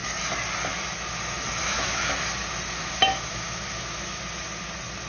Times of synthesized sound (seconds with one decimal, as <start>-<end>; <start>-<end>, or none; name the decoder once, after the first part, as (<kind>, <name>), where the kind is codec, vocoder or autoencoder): 1.6-2.1 (autoencoder, DAC-VAE); 2.8-4.2